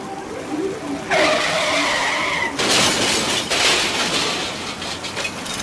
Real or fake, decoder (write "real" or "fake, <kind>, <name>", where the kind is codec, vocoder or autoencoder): real